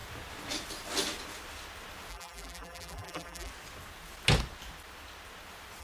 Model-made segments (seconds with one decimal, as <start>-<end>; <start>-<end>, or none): 2.1-3.5